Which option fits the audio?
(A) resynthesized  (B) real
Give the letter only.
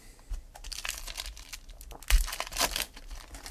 B